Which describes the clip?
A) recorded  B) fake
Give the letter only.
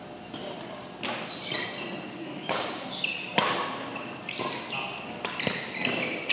A